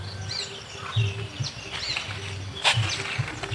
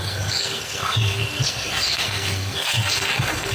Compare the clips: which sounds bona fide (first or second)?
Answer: first